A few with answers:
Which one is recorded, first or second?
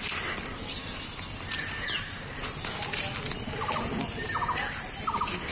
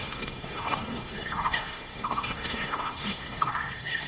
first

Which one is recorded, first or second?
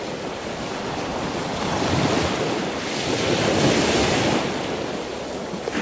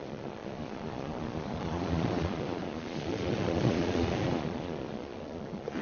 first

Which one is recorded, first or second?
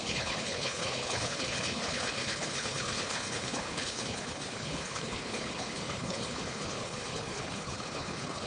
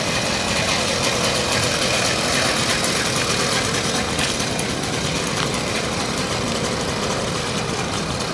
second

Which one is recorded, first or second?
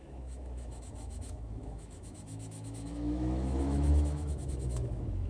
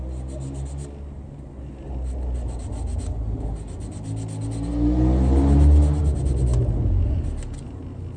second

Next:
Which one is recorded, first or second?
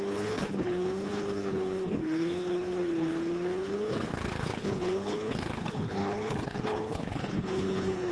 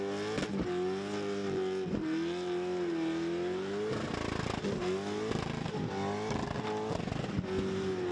second